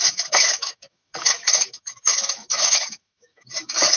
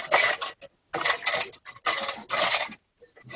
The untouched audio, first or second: second